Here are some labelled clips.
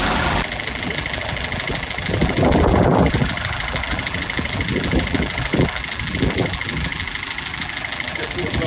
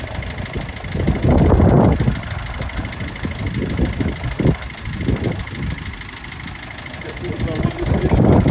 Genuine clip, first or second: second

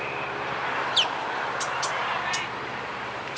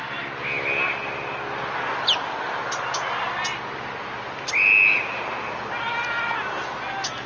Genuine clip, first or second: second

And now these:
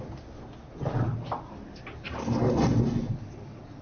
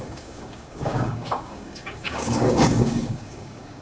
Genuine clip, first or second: first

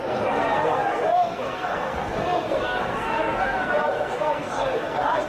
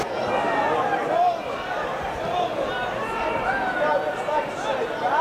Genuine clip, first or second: second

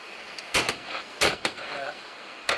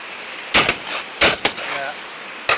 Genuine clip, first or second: second